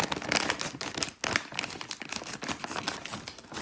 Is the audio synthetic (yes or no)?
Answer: no